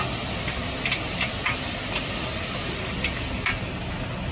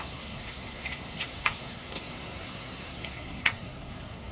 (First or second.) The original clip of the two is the first